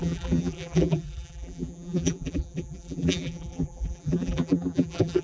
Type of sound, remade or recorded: remade